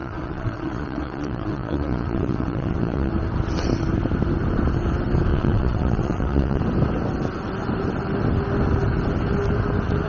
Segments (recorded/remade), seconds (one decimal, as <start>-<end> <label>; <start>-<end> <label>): 0.0-3.1 remade; 3.1-5.3 recorded; 5.3-6.6 remade; 6.6-10.1 recorded